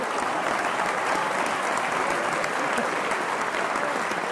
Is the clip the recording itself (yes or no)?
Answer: yes